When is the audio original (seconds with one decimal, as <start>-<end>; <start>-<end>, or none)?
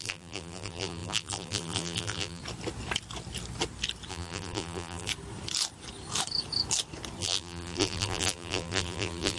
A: 2.4-4.1; 5.1-7.2